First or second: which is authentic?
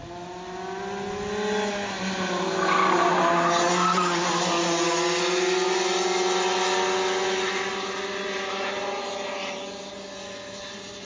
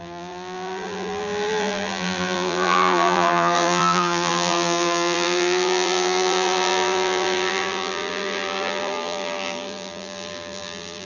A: first